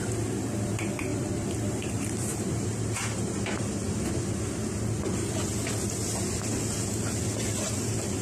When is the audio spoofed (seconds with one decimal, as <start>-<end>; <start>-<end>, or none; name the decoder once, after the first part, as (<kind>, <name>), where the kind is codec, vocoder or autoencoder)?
1.1-5.3 (vocoder, BigVGAN v2)